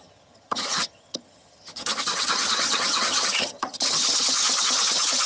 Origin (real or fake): fake